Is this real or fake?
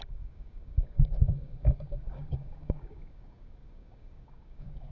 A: fake